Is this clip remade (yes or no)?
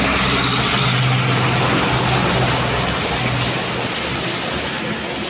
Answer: no